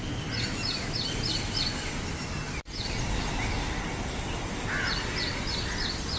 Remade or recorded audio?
recorded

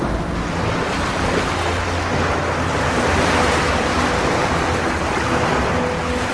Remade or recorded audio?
recorded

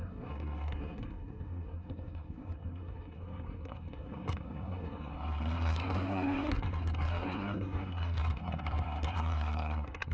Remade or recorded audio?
remade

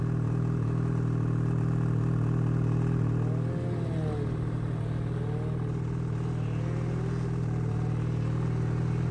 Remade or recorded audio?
recorded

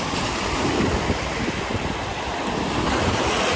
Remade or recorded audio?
recorded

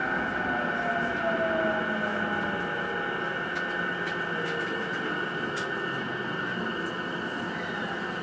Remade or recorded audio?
recorded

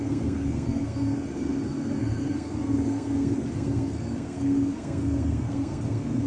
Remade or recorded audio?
remade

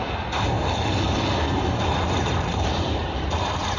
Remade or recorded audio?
recorded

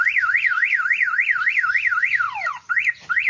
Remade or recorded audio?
recorded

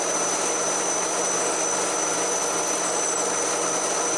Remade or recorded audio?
recorded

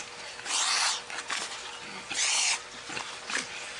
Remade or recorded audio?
recorded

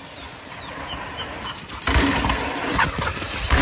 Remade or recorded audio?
recorded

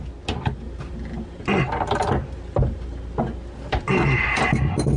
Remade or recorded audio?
recorded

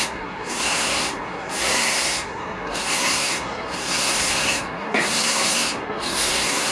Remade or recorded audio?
remade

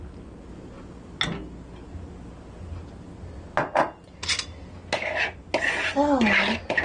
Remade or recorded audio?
recorded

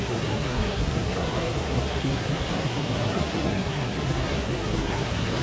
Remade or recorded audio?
remade